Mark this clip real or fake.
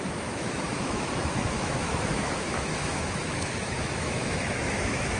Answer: fake